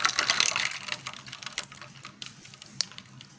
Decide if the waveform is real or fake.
real